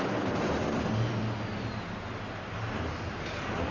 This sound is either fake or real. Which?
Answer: real